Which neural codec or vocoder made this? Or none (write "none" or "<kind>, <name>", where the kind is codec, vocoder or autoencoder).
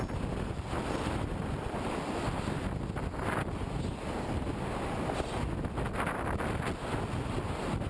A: none